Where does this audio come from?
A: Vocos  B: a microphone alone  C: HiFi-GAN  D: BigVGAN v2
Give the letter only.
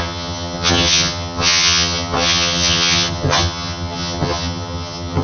C